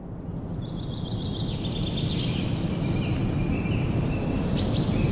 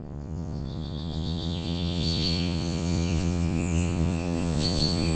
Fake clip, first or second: second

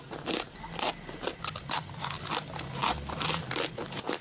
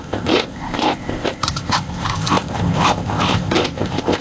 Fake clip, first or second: second